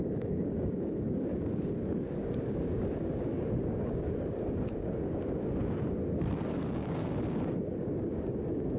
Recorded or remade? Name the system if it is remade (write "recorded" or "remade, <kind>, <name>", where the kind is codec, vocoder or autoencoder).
remade, codec, DAC